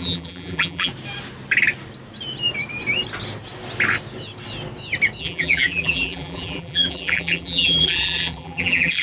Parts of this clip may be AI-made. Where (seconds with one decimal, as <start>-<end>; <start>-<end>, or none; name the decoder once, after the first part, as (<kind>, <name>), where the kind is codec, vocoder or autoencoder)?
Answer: 0.0-0.9 (vocoder, BigVGAN v2); 5.2-9.0